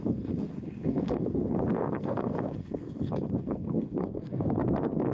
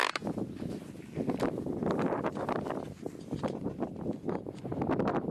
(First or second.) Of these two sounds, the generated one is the first